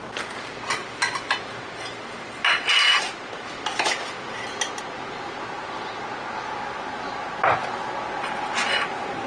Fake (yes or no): no